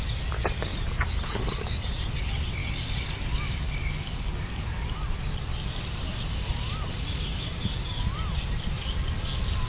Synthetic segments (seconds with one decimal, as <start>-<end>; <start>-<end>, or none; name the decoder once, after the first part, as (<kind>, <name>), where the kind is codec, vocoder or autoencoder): none